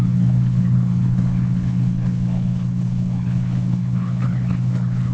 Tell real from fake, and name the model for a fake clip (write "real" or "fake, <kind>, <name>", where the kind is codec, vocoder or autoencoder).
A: fake, codec, HILCodec